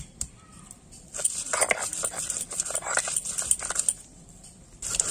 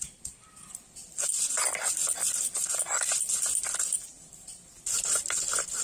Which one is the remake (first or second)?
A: first